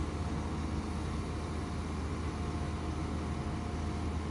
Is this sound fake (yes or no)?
no